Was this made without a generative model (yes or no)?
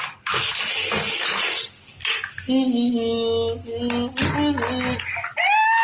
yes